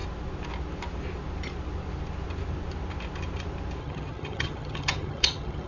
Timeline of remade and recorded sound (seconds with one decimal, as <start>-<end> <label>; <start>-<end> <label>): 0.0-3.8 recorded; 3.8-5.7 remade